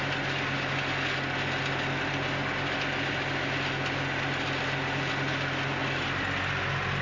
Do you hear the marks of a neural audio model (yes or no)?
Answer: no